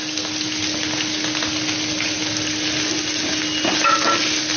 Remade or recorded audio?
recorded